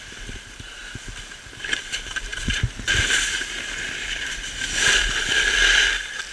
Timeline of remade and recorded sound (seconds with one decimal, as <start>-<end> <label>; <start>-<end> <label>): 0.0-0.8 remade; 0.8-1.6 recorded; 1.6-2.3 remade; 2.3-6.3 recorded